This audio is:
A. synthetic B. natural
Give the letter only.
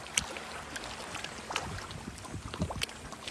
B